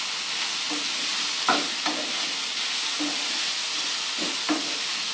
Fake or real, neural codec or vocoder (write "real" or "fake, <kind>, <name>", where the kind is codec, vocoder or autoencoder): real